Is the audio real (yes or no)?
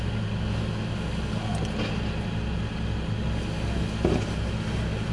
yes